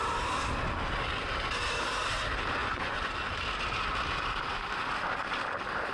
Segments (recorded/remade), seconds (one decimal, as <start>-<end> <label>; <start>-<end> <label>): 0.0-2.6 recorded; 2.6-3.1 remade; 3.1-5.9 recorded